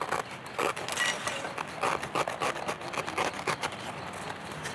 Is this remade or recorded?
recorded